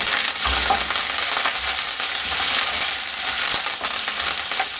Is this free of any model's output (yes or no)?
no